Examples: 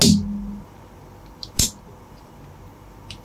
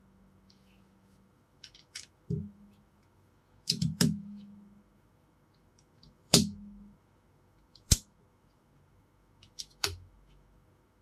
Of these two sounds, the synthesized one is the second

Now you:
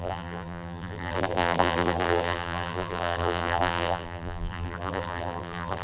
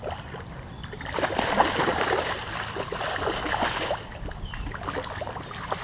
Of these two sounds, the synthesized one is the first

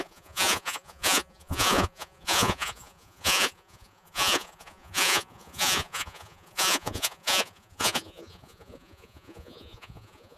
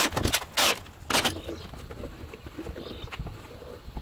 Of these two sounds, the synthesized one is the first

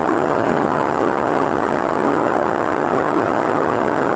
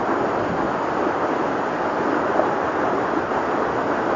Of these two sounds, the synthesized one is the first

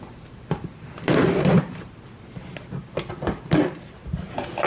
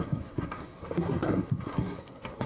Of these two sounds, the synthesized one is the second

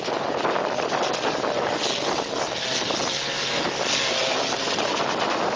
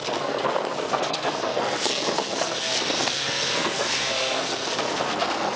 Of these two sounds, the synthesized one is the second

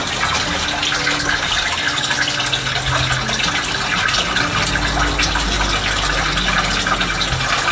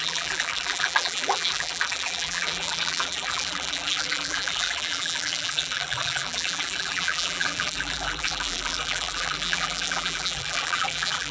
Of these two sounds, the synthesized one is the second